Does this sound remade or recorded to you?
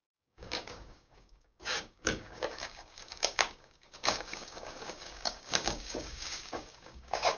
remade